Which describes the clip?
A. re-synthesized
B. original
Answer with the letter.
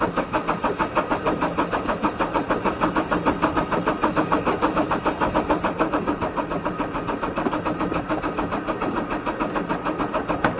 B